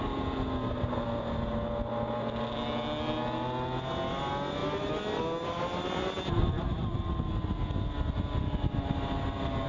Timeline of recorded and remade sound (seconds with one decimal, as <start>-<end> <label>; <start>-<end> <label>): 0.0-9.7 recorded